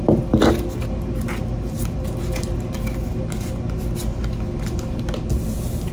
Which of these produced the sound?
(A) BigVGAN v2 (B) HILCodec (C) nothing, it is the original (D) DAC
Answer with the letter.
C